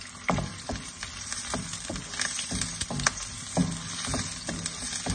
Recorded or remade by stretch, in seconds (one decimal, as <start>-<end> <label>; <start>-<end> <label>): 0.0-5.1 recorded